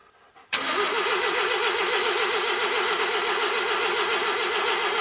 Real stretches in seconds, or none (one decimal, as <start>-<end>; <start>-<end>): 3.0-5.0